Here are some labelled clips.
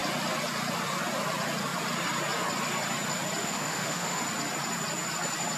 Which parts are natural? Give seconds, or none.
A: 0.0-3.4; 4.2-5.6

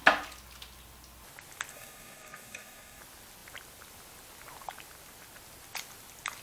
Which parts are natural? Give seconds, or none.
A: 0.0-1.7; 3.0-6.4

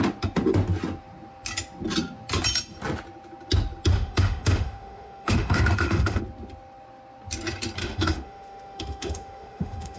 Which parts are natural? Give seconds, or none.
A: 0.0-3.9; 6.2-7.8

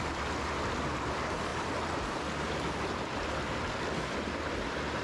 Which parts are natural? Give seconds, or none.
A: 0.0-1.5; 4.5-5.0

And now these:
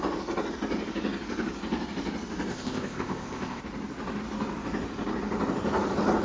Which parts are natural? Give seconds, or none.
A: 0.0-2.5; 3.6-6.2

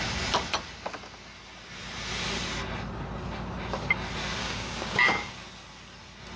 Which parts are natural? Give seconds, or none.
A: 0.0-4.4; 5.3-6.4

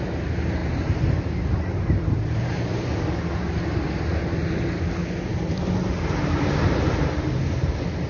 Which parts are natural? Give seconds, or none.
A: 0.0-0.6; 4.2-8.1

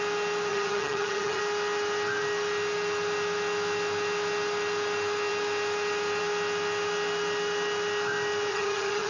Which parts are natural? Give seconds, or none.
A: 0.0-0.5; 1.4-8.5